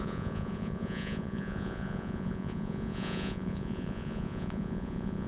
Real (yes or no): no